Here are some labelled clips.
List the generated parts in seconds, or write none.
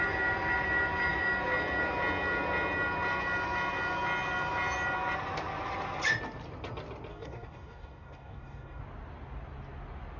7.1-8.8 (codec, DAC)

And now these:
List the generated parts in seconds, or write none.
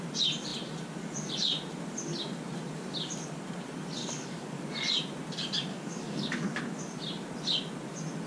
4.0-4.6 (codec, DAC); 5.7-6.6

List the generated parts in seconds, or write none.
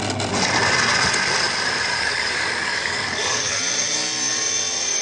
1.9-3.6 (codec, DAC)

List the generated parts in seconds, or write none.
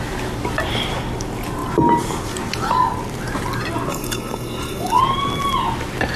3.9-5.0 (codec, DAC)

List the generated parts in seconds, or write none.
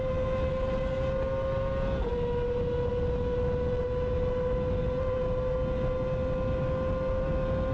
none